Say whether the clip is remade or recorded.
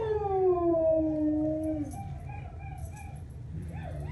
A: recorded